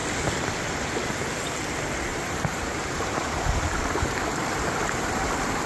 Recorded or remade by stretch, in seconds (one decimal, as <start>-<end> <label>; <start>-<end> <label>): 0.0-2.1 recorded; 2.1-4.1 remade; 4.1-5.7 recorded